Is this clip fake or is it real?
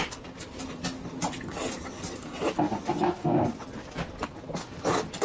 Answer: real